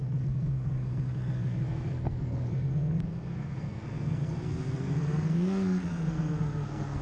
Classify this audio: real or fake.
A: fake